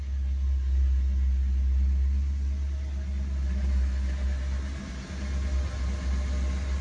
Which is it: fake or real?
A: real